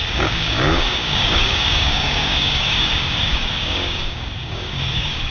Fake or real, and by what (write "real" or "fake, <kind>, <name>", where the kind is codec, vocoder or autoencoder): fake, codec, DAC